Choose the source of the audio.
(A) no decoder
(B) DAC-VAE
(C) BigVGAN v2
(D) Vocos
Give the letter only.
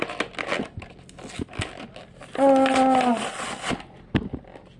A